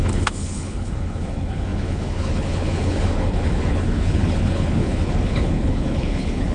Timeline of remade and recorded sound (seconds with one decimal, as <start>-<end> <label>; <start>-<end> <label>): 0.0-6.5 remade